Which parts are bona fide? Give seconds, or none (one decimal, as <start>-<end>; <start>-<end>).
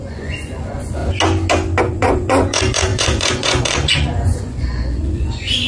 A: 1.0-1.8